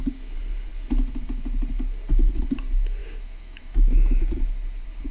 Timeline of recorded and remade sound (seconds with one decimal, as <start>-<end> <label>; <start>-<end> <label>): 0.0-3.0 recorded; 3.0-4.2 remade; 4.2-5.1 recorded

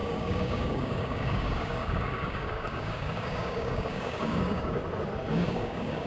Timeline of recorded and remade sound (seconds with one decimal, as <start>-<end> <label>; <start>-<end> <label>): 0.0-4.8 remade; 4.8-5.3 recorded; 5.3-6.1 remade

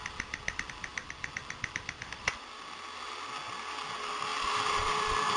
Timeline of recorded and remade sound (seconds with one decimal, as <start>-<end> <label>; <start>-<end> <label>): 0.0-0.9 recorded; 0.9-2.7 remade; 2.7-4.3 recorded; 4.3-5.4 remade

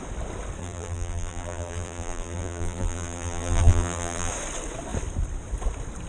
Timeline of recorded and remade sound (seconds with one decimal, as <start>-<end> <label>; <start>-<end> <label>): 0.0-0.6 recorded; 0.6-4.3 remade; 4.3-6.1 recorded

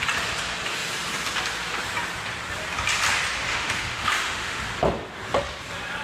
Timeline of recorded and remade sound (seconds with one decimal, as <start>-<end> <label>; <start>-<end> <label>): 0.0-3.5 recorded; 3.5-4.6 remade; 4.6-6.0 recorded

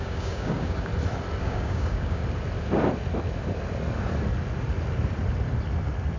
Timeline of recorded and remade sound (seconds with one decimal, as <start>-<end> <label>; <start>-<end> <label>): 0.0-0.9 remade; 0.9-1.4 recorded; 1.4-2.2 remade; 2.2-6.2 recorded